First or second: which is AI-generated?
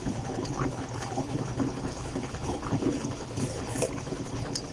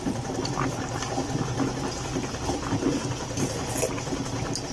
first